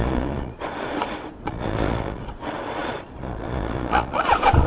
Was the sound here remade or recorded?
remade